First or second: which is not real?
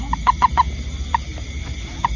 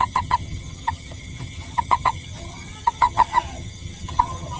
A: second